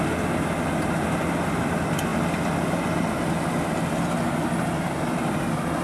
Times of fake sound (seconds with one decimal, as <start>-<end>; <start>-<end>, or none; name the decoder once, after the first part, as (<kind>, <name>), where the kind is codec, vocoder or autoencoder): none